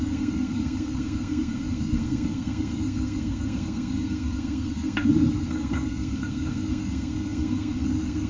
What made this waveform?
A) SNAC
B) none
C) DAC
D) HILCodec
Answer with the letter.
A